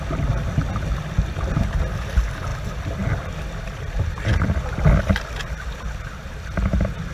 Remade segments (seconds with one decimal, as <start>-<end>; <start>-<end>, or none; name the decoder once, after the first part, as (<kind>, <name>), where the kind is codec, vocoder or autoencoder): none